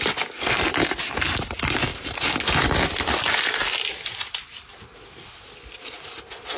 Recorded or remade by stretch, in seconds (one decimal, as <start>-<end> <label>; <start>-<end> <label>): 0.0-6.6 recorded

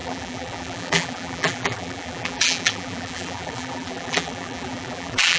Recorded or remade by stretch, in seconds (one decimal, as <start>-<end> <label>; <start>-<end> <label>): 0.0-5.4 remade

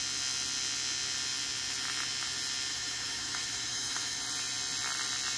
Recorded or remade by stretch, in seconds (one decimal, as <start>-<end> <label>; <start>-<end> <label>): 0.0-2.7 recorded; 2.7-4.2 remade; 4.2-5.4 recorded